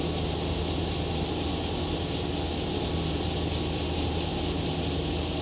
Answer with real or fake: real